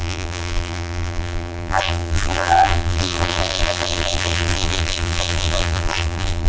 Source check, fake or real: fake